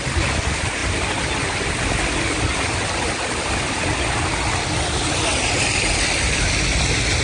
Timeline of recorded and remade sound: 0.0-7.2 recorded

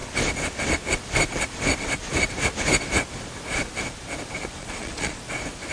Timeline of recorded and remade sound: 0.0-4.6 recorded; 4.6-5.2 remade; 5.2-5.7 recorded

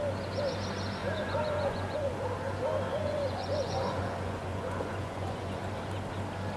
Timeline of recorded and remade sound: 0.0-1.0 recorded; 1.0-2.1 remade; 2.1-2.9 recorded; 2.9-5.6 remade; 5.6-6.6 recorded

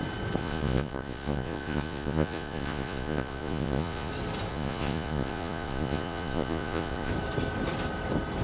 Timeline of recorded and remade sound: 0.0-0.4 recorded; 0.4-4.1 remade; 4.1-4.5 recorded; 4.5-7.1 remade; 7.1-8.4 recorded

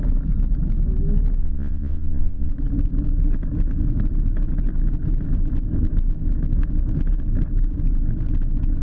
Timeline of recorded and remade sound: 0.0-1.4 recorded; 1.4-2.5 remade; 2.5-8.8 recorded

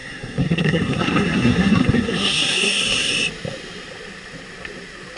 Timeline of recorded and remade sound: 0.0-3.1 remade; 3.1-5.2 recorded

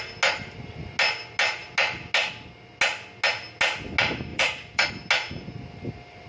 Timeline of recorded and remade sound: 0.0-4.3 recorded; 4.3-4.9 remade; 4.9-6.3 recorded